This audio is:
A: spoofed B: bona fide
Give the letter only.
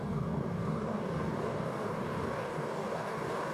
A